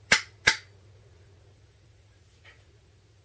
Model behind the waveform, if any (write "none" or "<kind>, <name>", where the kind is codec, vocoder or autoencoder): vocoder, Vocos